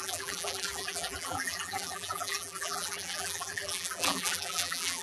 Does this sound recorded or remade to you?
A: remade